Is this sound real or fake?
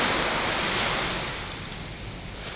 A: real